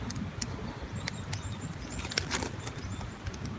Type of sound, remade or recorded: recorded